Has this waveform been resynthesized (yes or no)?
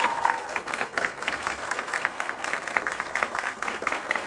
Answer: yes